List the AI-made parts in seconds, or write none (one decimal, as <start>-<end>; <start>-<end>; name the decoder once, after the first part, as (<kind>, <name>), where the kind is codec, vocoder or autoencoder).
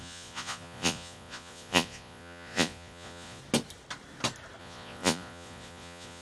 0.0-3.4 (vocoder, Vocos); 4.6-6.2